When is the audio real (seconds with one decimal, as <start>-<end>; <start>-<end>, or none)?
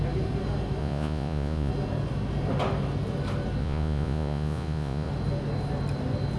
0.0-0.8; 1.7-3.6; 5.1-6.4